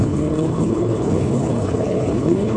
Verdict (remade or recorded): remade